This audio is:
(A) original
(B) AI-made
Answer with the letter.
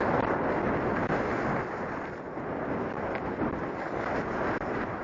A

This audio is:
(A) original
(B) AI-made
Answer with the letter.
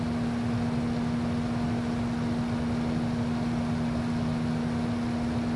A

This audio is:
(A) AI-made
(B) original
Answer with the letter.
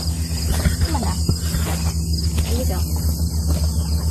B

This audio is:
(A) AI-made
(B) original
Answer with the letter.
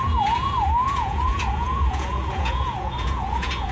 A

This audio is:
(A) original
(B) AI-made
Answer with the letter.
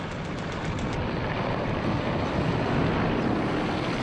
A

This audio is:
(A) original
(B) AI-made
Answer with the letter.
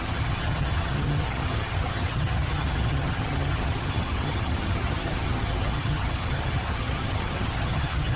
B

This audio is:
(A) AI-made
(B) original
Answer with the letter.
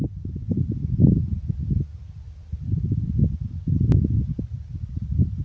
B